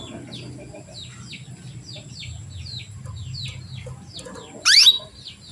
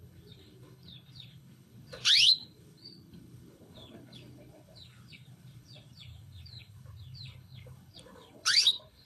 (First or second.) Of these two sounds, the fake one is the second